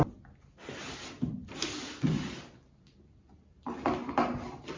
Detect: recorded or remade recorded